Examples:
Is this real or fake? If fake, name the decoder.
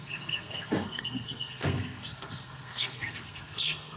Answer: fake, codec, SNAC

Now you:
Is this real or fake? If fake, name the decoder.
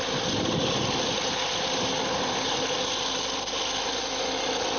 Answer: real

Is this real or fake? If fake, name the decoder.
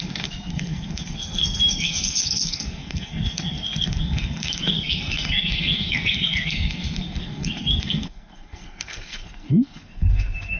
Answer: fake, codec, SNAC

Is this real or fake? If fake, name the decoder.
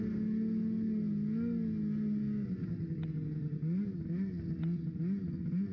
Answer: real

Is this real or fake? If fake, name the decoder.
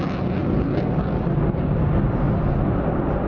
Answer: real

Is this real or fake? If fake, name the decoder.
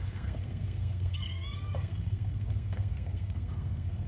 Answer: fake, codec, SNAC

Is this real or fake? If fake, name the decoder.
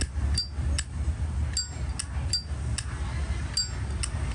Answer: real